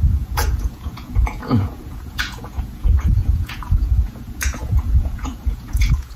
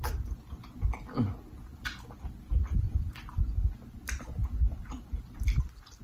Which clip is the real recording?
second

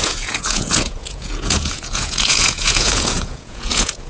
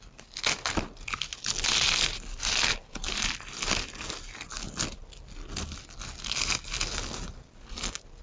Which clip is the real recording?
second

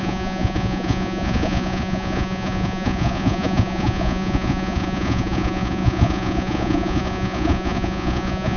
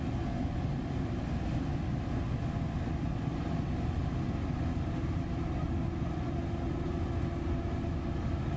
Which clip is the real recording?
second